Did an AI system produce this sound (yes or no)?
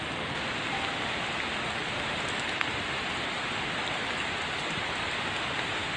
no